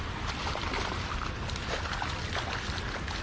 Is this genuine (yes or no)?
yes